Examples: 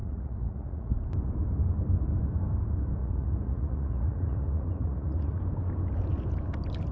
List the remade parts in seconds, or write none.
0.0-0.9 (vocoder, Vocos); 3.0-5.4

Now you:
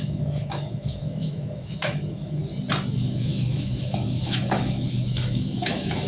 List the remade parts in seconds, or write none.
0.0-2.4 (autoencoder, DAC-VAE); 2.9-6.1

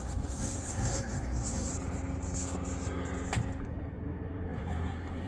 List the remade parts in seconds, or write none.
0.0-1.7 (codec, SNAC); 3.6-5.3

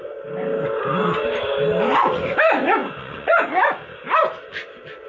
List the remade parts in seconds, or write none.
2.8-3.6 (vocoder, Vocos)